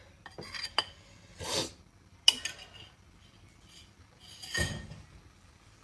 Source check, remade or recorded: recorded